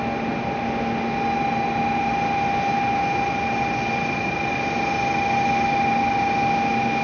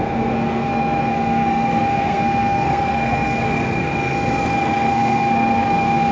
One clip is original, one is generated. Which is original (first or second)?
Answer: first